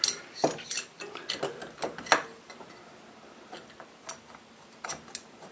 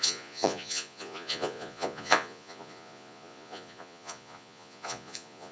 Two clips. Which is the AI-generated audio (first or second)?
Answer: second